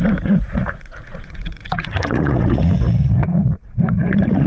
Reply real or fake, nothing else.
fake